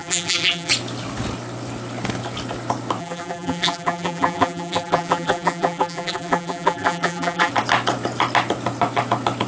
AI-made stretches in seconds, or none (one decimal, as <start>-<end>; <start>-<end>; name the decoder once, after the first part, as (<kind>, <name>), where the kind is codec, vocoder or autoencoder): 0.0-0.7 (vocoder, BigVGAN v2); 3.0-7.5